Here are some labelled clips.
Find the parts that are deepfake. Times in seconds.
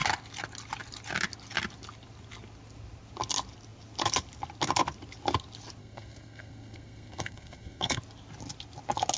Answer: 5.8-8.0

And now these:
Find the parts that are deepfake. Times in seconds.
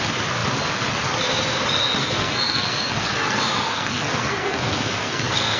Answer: 2.0-5.6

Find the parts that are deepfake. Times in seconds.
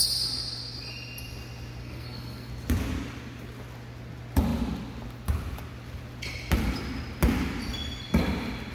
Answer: 1.8-2.5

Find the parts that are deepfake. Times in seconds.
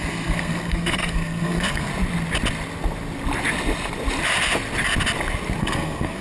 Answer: 0.0-1.9; 5.6-6.2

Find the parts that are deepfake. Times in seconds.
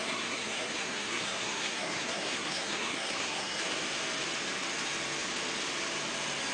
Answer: 0.0-3.6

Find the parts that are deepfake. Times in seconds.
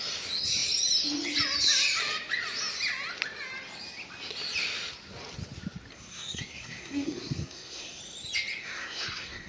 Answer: 5.9-8.0; 8.6-9.5